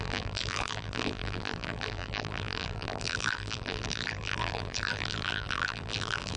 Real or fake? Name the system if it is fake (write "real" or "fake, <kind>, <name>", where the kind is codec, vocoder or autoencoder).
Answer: fake, vocoder, BigVGAN v2